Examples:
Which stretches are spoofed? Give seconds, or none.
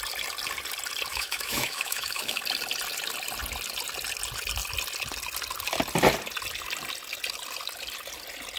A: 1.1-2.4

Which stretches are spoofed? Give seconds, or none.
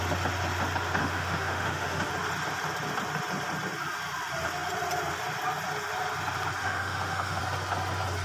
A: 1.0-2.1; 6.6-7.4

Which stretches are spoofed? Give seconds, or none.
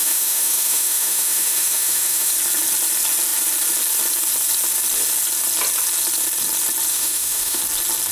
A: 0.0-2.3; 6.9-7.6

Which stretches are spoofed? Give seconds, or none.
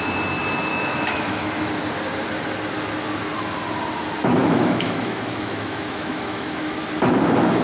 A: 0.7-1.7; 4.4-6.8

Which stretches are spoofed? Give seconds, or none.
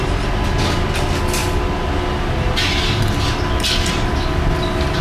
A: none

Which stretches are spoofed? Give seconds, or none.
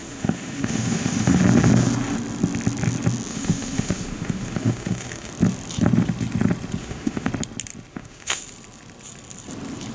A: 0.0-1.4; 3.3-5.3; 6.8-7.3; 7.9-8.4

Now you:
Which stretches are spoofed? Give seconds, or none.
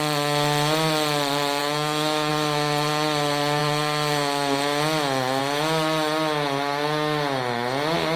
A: 1.6-2.3